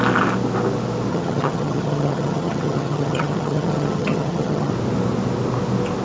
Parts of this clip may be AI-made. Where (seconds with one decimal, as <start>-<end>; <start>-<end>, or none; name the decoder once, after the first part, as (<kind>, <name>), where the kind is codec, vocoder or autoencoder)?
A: 1.1-4.7 (vocoder, HiFi-GAN)